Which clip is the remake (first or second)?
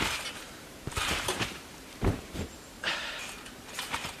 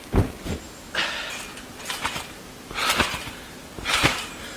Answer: first